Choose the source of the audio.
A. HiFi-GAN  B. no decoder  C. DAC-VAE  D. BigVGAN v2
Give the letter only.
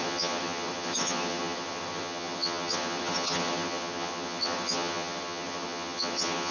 A